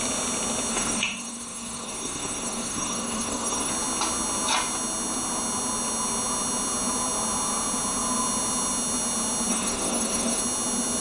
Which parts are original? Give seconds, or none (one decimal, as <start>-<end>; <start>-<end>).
0.0-0.7; 3.7-9.5; 10.4-11.0